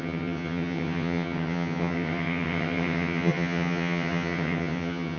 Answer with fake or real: fake